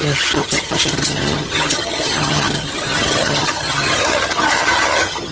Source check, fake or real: fake